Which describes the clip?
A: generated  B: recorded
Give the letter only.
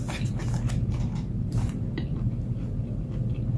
B